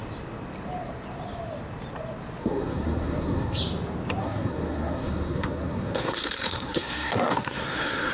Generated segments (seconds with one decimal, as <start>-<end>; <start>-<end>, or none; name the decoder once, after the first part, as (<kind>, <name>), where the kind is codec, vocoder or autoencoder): 2.4-3.6 (codec, SNAC); 4.2-8.1